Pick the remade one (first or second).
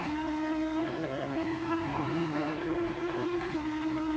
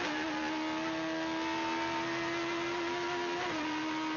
first